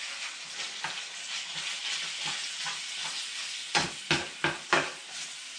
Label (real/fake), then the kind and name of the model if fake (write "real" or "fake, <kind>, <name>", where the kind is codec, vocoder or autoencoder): real